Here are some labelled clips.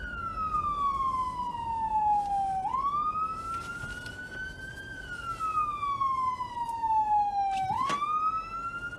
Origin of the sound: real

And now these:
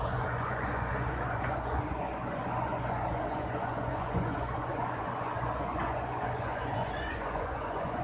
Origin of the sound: fake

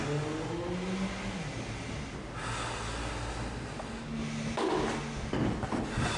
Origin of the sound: real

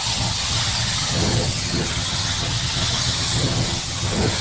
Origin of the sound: fake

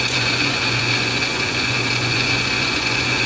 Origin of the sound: fake